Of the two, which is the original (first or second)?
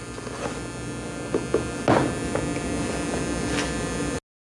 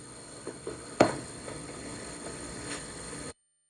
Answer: first